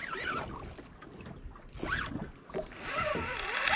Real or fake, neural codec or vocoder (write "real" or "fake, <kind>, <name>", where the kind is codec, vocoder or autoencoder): real